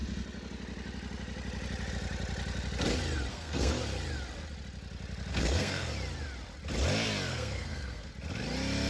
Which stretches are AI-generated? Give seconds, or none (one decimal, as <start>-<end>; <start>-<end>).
3.3-3.8; 5.3-5.9; 7.3-8.1